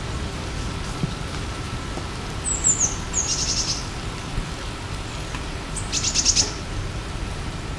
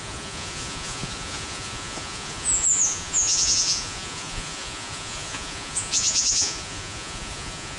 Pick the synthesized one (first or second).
second